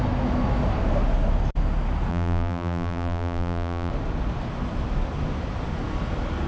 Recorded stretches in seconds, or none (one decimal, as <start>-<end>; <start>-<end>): 0.0-2.1; 3.9-6.5